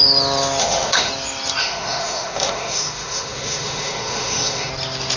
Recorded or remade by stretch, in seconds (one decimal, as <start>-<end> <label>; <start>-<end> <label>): 0.0-0.6 recorded; 0.6-1.1 remade; 1.1-1.6 recorded; 1.6-4.7 remade; 4.7-5.2 recorded